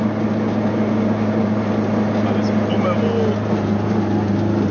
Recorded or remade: recorded